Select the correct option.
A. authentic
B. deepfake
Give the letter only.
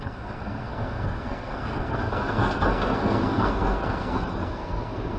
B